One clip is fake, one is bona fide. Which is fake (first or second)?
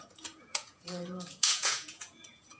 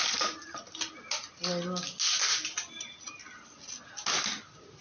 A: first